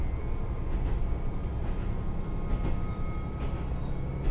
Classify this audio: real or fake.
real